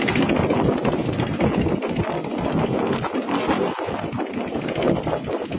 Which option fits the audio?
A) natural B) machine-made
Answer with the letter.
A